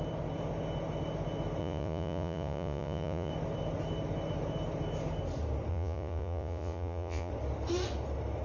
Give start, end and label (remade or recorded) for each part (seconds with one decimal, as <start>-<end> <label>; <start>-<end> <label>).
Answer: 0.0-1.6 recorded; 1.6-3.3 remade; 3.3-5.7 recorded; 5.7-7.3 remade; 7.3-8.4 recorded